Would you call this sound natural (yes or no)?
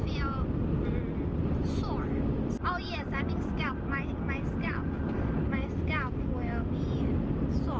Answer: yes